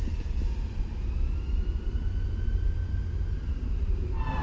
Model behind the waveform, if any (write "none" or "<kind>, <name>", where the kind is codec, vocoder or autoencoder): none